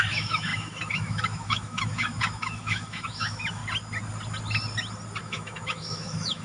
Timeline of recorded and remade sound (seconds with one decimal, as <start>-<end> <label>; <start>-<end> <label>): 0.0-3.6 remade; 3.6-5.2 recorded; 5.2-6.4 remade